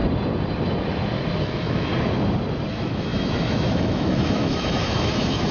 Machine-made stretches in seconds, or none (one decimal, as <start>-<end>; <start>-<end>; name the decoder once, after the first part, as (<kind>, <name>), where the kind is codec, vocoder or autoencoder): 1.4-1.9 (autoencoder, DAC-VAE); 2.7-5.5